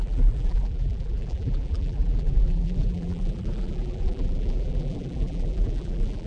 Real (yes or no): no